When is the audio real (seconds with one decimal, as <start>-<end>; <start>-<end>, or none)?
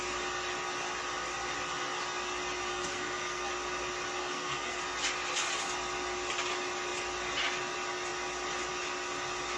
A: 0.0-2.7; 3.5-4.2; 4.8-9.6